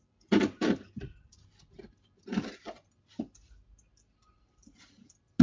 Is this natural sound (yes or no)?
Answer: yes